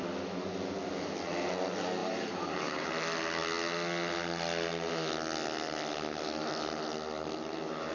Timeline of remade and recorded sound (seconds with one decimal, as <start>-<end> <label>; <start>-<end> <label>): 0.0-2.0 recorded; 2.0-2.9 remade; 2.9-7.9 recorded